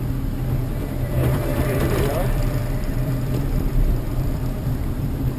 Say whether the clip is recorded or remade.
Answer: remade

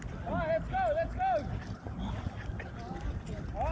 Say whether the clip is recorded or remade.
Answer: recorded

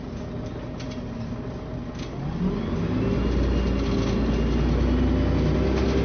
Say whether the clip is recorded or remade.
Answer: recorded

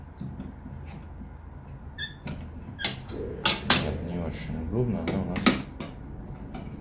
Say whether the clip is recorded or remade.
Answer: recorded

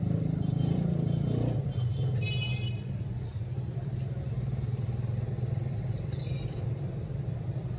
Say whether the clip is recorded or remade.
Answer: remade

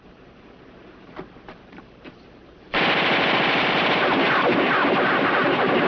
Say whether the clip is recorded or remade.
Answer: remade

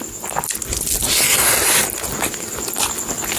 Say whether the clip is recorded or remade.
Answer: recorded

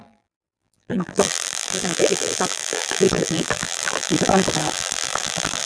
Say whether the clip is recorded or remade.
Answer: remade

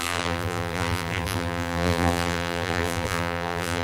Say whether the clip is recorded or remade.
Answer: remade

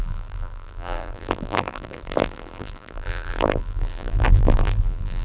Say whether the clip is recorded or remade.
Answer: remade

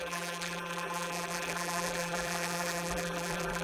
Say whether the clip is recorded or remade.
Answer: remade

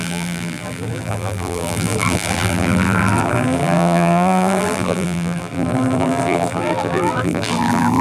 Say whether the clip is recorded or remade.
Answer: remade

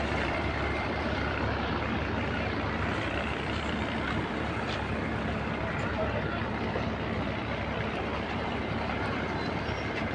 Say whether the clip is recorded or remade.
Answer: remade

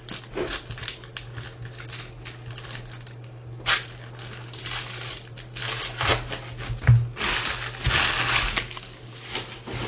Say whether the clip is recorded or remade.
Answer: recorded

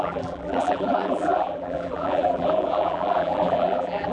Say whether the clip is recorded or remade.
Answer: remade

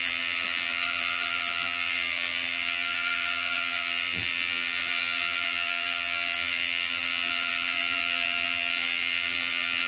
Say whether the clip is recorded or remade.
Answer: remade